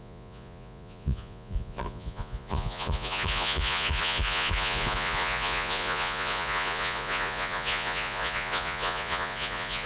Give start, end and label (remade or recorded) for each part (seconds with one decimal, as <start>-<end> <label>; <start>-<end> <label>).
0.0-9.9 remade